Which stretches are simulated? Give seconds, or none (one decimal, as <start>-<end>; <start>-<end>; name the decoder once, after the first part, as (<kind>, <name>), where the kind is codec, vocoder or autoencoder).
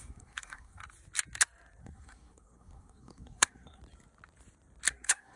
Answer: 0.0-0.8 (codec, SNAC); 1.8-3.8; 4.9-5.4